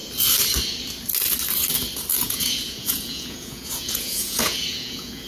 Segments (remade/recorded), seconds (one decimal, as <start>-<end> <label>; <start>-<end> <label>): 0.0-2.1 recorded; 2.1-5.3 remade